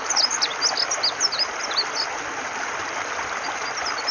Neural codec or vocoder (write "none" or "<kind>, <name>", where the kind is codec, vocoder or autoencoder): none